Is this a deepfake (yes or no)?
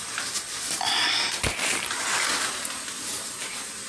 no